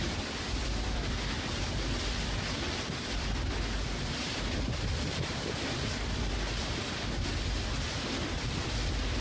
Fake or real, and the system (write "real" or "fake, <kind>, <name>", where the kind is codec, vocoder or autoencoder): fake, vocoder, BigVGAN v2